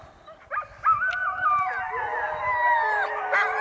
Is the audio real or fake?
real